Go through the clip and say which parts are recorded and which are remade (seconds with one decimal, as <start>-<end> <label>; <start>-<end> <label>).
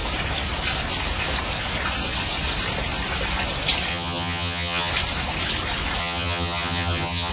0.0-3.9 recorded; 3.9-4.9 remade; 4.9-6.0 recorded; 6.0-7.3 remade